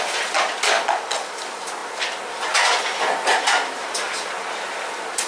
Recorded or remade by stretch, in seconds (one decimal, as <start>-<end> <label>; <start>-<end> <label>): 0.0-5.3 recorded